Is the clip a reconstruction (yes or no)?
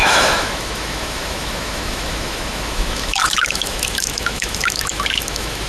yes